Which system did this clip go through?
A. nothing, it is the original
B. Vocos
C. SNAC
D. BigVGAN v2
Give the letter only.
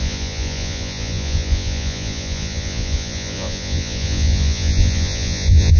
B